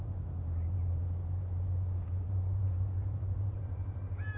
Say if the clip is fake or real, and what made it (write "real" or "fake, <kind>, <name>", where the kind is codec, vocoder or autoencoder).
fake, vocoder, BigVGAN v2